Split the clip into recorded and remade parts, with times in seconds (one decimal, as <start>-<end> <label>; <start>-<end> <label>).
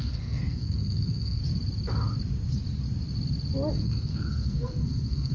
0.0-1.4 remade; 1.4-3.7 recorded; 3.7-5.3 remade